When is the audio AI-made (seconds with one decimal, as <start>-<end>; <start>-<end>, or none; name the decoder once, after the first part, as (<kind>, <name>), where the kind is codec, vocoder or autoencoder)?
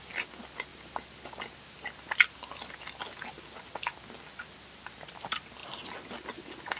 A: none